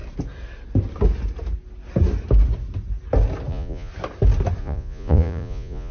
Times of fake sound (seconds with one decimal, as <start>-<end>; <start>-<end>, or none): 3.5-3.9; 4.6-5.9